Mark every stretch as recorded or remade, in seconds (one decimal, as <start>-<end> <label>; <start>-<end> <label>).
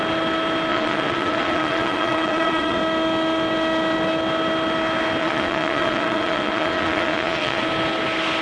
0.0-0.7 recorded; 0.7-2.8 remade; 2.8-5.2 recorded; 5.2-7.6 remade; 7.6-8.4 recorded